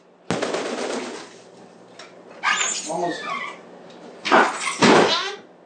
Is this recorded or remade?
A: recorded